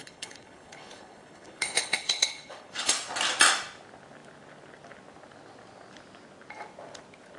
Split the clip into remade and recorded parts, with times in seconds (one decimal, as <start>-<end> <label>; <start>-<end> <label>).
0.0-2.9 remade; 2.9-7.4 recorded